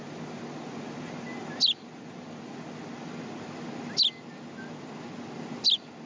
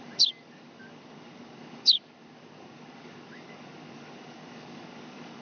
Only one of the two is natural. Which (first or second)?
first